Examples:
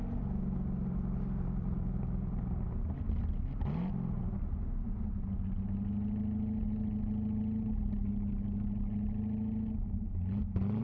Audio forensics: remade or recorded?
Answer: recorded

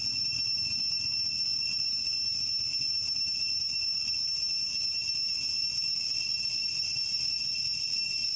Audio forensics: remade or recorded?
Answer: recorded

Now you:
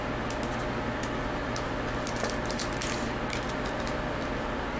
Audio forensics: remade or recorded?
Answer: recorded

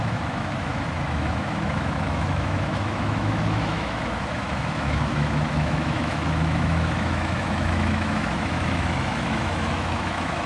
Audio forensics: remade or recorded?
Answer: remade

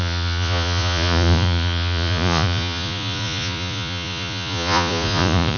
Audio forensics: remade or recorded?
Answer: remade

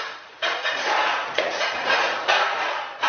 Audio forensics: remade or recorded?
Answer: remade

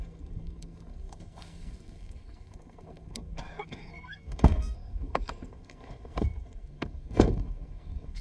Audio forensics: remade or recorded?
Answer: remade